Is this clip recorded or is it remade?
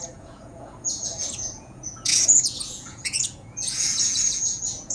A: remade